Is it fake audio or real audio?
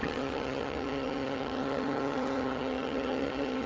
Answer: fake